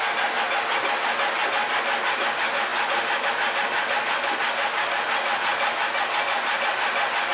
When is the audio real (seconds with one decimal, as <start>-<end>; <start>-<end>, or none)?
0.0-7.3